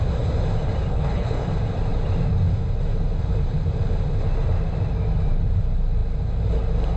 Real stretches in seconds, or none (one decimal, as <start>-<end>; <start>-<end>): 0.0-0.9; 1.5-7.0